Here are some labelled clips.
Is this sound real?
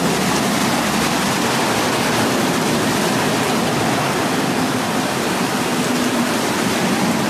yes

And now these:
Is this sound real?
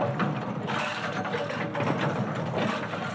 yes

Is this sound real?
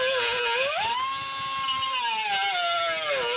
yes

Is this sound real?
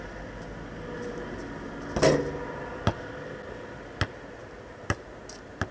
yes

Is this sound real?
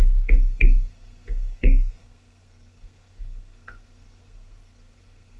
no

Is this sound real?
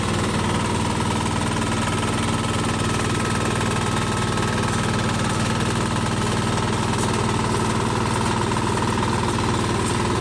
yes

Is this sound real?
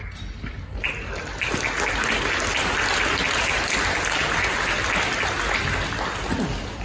yes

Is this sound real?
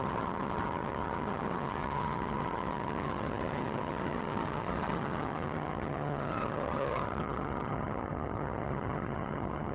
no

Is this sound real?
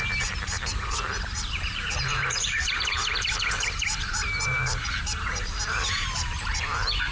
no